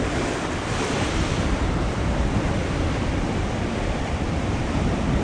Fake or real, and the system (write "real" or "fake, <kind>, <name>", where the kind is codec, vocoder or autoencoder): fake, vocoder, BigVGAN v2